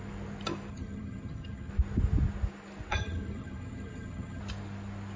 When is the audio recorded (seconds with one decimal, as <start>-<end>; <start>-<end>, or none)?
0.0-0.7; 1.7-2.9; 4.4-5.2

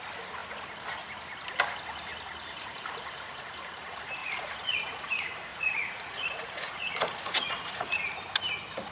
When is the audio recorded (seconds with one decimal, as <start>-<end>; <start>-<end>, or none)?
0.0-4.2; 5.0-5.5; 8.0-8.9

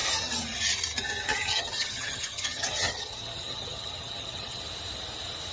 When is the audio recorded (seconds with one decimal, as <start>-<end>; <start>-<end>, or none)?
0.0-1.3; 4.6-5.5

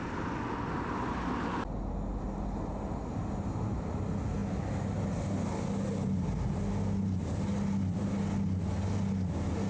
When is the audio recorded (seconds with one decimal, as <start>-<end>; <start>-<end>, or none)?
0.0-9.7